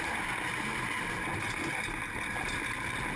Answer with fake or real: real